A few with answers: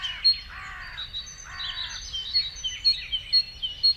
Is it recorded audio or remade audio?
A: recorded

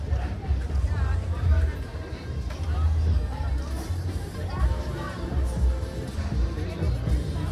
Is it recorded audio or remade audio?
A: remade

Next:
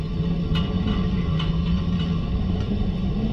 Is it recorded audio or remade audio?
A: recorded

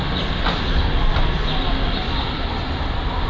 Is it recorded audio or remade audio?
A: recorded